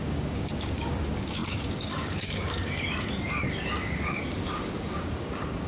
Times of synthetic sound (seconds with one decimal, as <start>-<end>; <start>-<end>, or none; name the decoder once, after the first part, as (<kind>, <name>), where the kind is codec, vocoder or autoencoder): 0.0-5.7 (codec, DAC)